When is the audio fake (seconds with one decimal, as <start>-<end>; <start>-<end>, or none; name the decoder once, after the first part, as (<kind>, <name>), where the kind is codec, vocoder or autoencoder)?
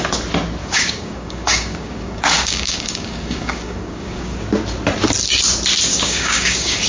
0.6-4.5 (codec, DAC); 5.9-6.9